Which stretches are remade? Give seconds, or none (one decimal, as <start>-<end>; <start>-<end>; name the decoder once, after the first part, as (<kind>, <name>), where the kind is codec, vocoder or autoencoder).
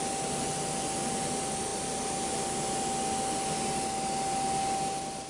none